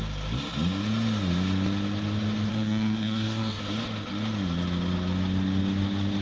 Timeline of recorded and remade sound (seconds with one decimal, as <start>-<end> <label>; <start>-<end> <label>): 0.0-2.5 recorded; 2.5-3.6 remade; 3.6-6.2 recorded

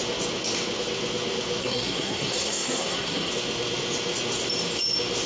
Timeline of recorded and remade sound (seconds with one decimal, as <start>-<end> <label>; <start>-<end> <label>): 0.0-1.6 recorded; 1.6-3.3 remade; 3.3-5.3 recorded